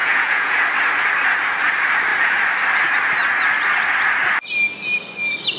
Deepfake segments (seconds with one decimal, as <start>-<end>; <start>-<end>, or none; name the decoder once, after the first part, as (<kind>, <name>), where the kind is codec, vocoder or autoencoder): 0.0-0.6 (vocoder, Vocos)